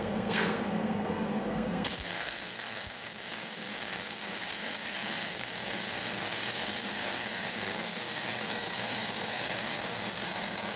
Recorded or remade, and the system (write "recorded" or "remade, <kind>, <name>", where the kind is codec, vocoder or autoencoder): remade, codec, SNAC